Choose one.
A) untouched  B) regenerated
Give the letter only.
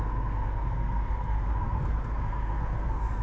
B